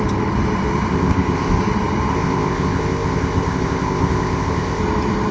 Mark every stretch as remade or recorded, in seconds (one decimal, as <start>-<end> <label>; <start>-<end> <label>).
0.0-0.9 recorded; 0.9-1.6 remade; 1.6-2.1 recorded; 2.1-4.8 remade; 4.8-5.3 recorded